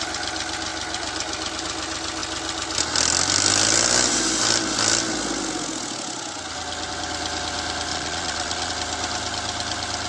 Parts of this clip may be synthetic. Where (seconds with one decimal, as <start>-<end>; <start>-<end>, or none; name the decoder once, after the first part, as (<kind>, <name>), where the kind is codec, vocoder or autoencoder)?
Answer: 7.9-8.7 (vocoder, Vocos)